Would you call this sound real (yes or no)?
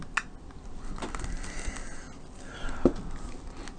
yes